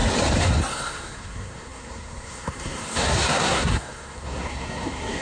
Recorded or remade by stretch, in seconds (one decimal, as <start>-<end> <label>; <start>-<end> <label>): 0.0-0.7 recorded; 0.7-5.2 remade